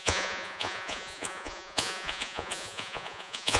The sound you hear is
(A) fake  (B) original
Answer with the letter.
A